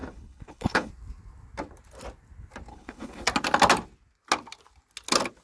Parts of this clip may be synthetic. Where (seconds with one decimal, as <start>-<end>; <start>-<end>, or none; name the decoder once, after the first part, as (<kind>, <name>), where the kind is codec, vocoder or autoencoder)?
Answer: 0.0-0.9 (codec, HILCodec); 2.7-3.2